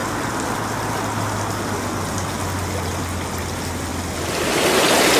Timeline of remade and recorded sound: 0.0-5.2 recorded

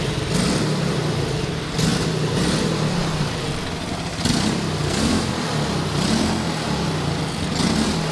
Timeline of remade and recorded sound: 0.0-4.8 recorded; 4.8-5.3 remade; 5.3-8.1 recorded

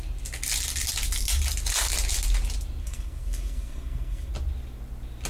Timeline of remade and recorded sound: 0.0-2.8 recorded; 2.8-4.3 remade; 4.3-5.3 recorded

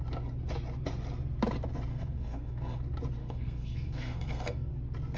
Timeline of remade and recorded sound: 0.0-1.9 recorded; 1.9-2.8 remade; 2.8-3.2 recorded; 3.2-4.7 remade; 4.7-5.2 recorded

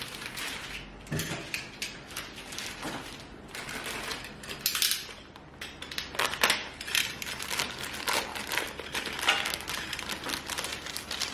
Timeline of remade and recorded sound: 0.0-11.3 recorded